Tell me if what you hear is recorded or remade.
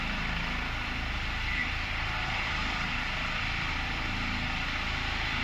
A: remade